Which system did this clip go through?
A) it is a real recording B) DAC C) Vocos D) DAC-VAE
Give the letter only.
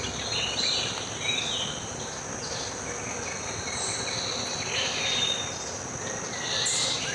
A